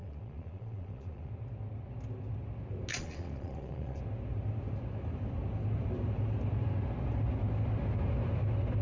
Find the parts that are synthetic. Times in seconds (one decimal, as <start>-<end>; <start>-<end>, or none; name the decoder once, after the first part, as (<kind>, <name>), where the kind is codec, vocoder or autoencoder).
0.0-1.3 (vocoder, Vocos); 2.9-4.0